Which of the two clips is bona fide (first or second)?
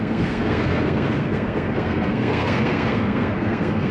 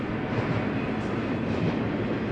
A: second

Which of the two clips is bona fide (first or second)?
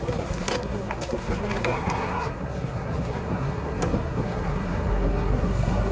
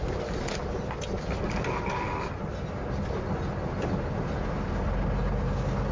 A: second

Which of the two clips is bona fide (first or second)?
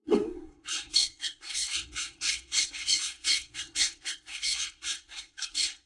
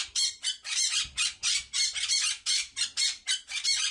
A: second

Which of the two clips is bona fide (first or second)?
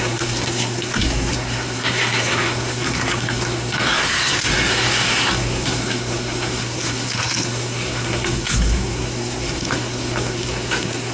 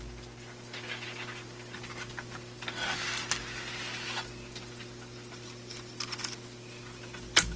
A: second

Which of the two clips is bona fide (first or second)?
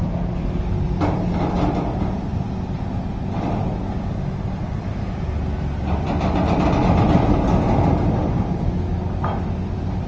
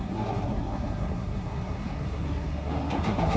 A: first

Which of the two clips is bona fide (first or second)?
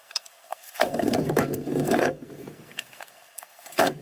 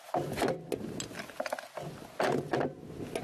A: second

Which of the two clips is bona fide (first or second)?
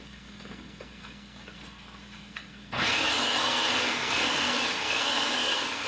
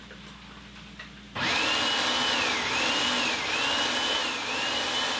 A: second